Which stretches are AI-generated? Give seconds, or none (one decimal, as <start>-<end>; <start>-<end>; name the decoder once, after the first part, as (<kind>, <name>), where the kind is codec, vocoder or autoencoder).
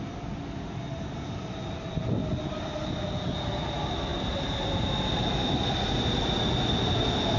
4.1-6.5 (vocoder, BigVGAN v2)